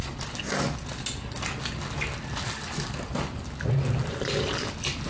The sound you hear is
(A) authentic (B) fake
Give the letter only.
A